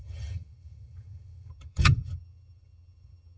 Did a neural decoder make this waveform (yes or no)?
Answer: yes